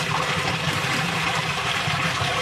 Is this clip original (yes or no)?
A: no